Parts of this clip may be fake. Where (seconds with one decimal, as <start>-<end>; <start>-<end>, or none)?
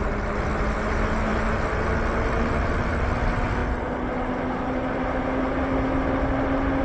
none